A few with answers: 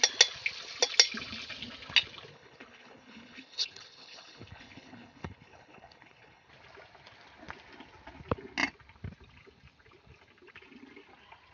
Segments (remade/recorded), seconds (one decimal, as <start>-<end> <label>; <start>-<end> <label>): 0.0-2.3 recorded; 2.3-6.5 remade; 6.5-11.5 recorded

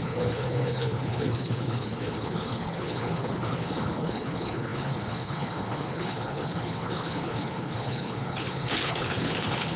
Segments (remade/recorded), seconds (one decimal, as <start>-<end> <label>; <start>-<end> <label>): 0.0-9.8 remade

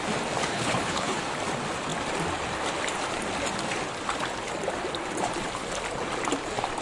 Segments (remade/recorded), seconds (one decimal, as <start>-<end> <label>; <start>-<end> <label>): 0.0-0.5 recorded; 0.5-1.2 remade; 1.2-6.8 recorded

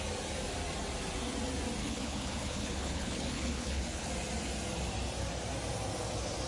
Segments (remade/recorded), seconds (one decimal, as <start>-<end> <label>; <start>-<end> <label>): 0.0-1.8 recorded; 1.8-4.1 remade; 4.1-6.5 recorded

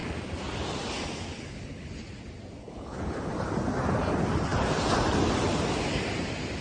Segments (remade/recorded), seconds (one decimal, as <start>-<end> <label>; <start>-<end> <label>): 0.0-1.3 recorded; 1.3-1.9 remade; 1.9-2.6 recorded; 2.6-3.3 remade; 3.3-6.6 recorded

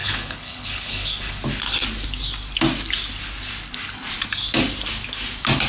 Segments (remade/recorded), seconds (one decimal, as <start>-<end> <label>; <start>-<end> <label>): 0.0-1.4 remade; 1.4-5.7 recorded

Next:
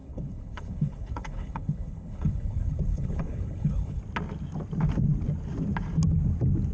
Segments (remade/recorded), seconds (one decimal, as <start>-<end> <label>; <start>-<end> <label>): 0.0-4.0 remade; 4.0-6.7 recorded